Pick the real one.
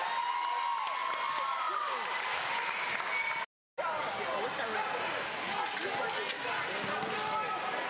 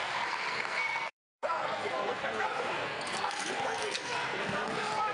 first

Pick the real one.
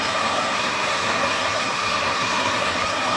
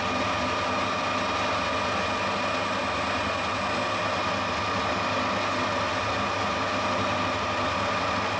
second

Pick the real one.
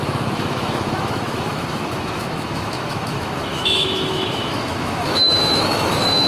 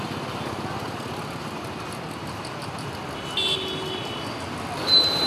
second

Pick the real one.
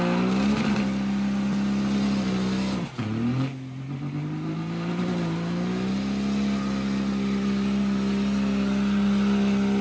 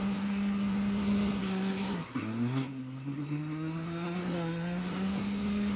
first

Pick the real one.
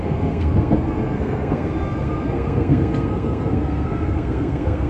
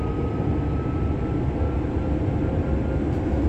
second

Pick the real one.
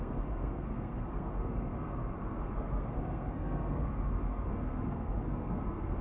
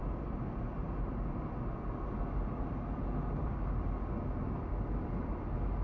second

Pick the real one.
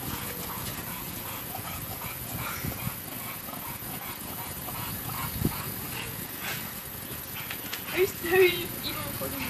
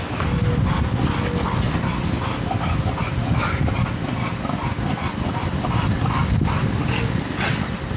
second